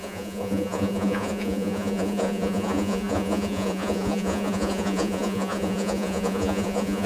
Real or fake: fake